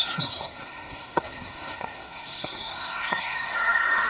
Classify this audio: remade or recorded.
remade